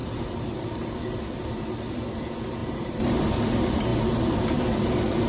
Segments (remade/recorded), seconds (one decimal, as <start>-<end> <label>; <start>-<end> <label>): 0.0-0.8 remade; 0.8-2.6 recorded; 2.6-3.2 remade; 3.2-5.3 recorded